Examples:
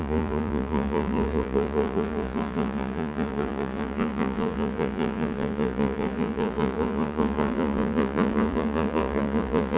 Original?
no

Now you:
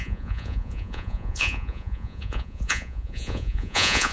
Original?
no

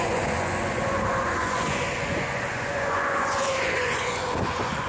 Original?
no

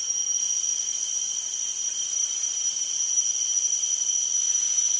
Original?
yes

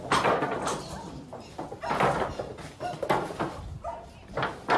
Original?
yes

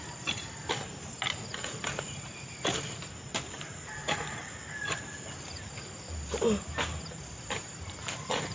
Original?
yes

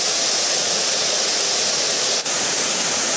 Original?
no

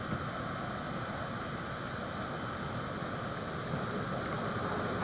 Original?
yes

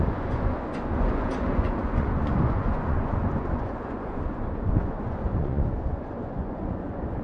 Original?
no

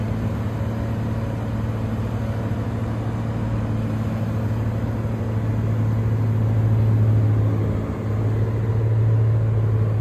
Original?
yes